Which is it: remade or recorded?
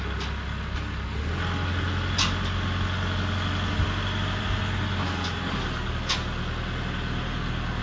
recorded